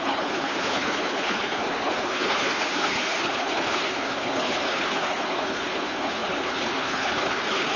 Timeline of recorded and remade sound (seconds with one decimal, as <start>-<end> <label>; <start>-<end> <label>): 0.0-7.8 remade